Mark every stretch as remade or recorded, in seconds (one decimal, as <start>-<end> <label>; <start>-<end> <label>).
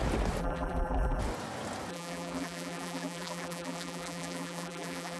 0.0-0.4 recorded; 0.4-1.2 remade; 1.2-1.9 recorded; 1.9-5.2 remade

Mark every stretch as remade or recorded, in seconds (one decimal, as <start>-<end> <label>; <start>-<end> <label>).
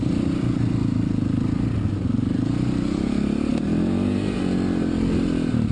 0.0-3.5 recorded; 3.5-4.4 remade; 4.4-5.7 recorded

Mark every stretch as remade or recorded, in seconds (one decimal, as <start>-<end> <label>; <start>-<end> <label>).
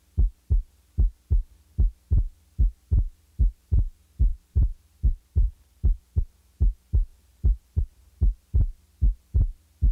0.0-4.3 recorded; 4.3-6.2 remade; 6.2-7.1 recorded; 7.1-7.8 remade; 7.8-9.9 recorded